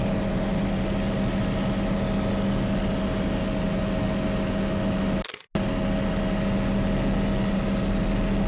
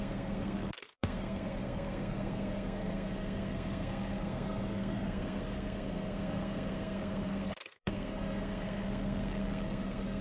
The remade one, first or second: second